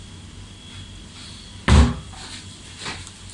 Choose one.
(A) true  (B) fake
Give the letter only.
A